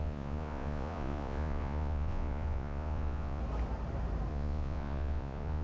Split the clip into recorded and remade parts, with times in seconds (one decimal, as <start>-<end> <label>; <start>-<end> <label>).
0.0-3.4 remade; 3.4-4.3 recorded; 4.3-5.6 remade